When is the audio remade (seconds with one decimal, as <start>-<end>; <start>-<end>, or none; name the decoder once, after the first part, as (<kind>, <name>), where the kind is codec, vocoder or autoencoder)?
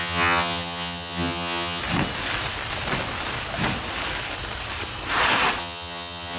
0.0-1.8 (vocoder, HiFi-GAN); 5.6-6.4